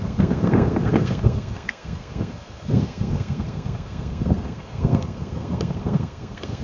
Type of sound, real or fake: fake